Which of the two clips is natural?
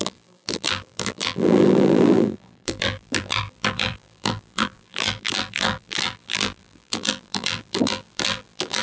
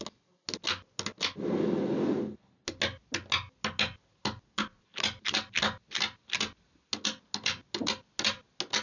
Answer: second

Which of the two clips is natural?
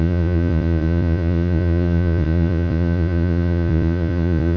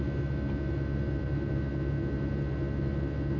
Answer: second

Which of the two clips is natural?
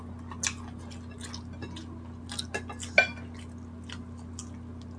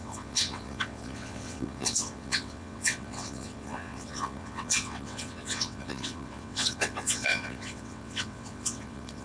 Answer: first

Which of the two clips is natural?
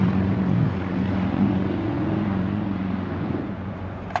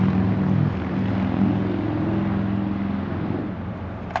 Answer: second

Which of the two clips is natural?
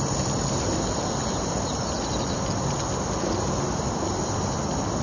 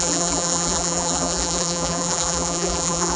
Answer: first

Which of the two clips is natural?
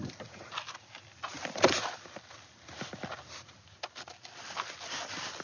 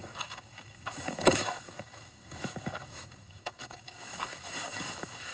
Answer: first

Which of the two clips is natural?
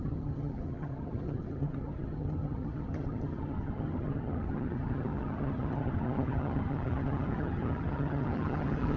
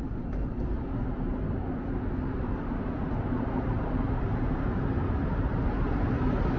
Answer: second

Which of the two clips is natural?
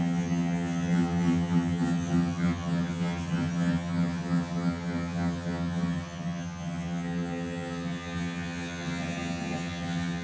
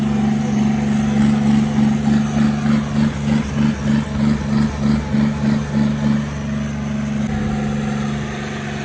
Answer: second